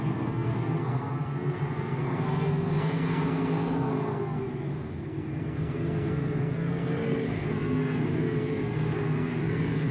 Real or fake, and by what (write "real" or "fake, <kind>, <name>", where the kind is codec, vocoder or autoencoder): fake, codec, SNAC